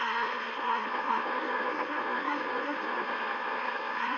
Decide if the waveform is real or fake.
fake